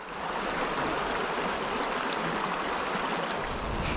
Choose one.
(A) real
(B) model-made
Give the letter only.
A